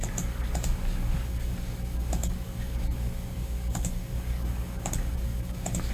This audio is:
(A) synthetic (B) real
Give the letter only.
A